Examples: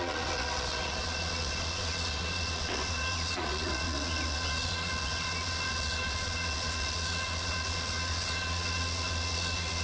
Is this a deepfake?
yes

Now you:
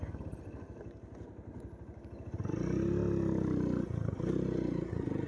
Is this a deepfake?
no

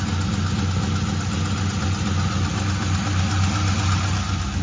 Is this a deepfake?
no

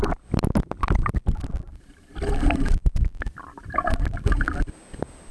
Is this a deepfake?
no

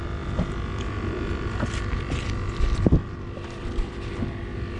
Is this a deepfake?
no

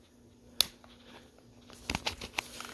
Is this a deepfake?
no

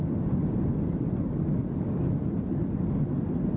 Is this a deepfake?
no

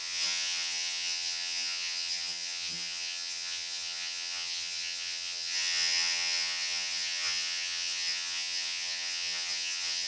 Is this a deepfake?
yes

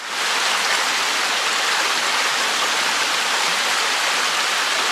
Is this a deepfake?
no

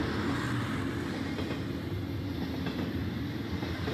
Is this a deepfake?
no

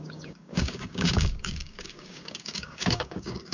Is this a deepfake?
yes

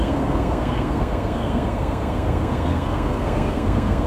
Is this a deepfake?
yes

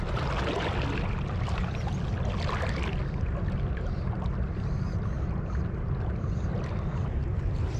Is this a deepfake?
no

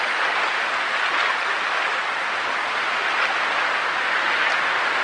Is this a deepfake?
no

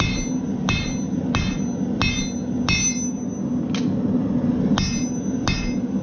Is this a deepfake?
no